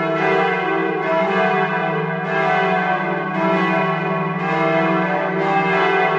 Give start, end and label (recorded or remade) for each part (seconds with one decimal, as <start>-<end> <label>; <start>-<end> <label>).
0.0-0.8 recorded; 0.8-1.3 remade; 1.3-6.2 recorded